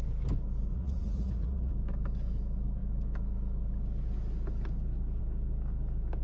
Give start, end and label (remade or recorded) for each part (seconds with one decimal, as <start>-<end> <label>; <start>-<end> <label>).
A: 0.0-0.7 recorded; 0.7-1.7 remade; 1.7-6.2 recorded